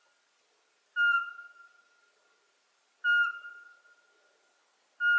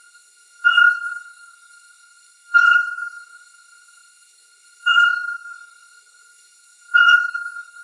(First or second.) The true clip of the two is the first